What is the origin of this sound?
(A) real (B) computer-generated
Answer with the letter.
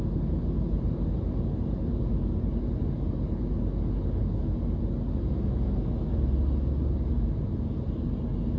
A